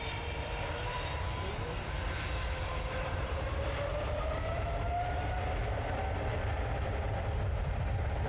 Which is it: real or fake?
fake